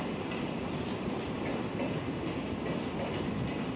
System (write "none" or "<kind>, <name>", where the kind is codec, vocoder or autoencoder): none